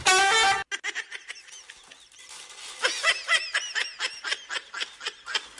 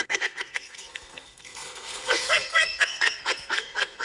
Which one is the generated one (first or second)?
second